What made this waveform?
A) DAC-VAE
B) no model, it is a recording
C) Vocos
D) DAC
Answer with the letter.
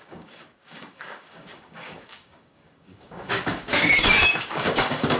D